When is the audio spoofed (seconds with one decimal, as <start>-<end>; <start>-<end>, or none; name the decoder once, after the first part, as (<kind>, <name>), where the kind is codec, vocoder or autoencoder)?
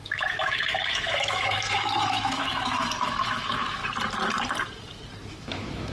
0.0-3.8 (autoencoder, DAC-VAE); 5.3-5.9